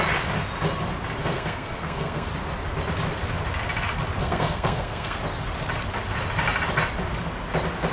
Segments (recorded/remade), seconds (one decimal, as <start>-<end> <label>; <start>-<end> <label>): 0.0-1.2 recorded; 1.2-2.3 remade; 2.3-4.2 recorded; 4.2-5.2 remade; 5.2-7.9 recorded